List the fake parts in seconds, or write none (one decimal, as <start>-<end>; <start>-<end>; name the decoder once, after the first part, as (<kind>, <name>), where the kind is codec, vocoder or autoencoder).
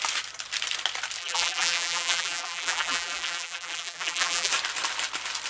1.2-4.5 (vocoder, BigVGAN v2)